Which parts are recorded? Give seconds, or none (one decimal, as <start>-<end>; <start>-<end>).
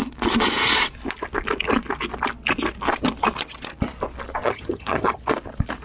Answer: 0.0-4.4; 5.2-5.8